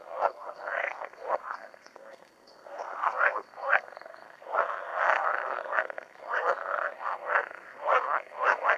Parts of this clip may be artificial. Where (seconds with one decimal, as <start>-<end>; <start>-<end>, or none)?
0.0-8.8